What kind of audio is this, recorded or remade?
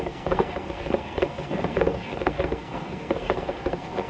remade